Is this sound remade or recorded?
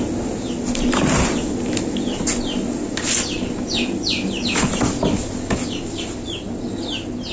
recorded